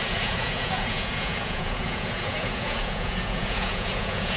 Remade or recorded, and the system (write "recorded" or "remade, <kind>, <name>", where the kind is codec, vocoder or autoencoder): remade, vocoder, Vocos